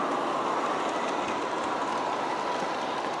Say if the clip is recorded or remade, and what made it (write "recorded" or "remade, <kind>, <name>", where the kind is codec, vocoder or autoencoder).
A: recorded